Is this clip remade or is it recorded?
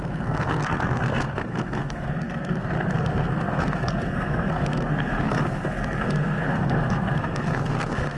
remade